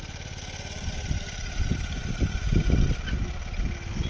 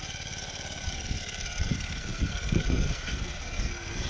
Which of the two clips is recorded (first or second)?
first